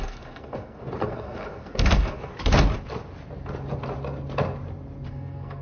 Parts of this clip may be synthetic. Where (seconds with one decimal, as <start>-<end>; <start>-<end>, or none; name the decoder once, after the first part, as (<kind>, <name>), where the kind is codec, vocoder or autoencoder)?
0.0-2.3 (codec, SNAC); 5.1-5.6